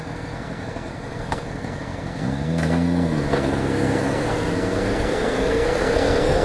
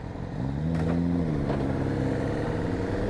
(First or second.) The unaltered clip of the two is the second